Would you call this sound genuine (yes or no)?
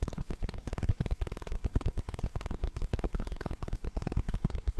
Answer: no